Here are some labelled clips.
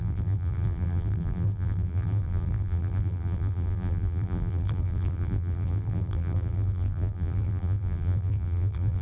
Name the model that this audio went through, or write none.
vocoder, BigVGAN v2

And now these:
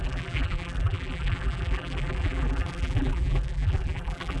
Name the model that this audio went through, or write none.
vocoder, BigVGAN v2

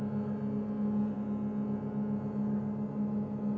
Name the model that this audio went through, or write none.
none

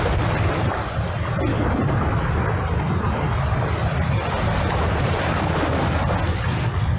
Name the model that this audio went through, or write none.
none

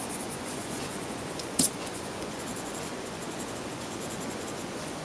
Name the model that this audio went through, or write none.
vocoder, Vocos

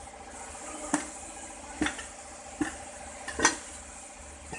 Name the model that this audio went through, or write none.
none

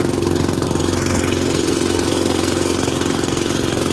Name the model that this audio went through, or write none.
codec, SNAC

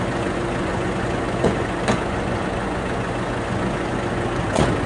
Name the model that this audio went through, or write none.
vocoder, Vocos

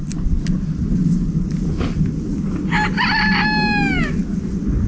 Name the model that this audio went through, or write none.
none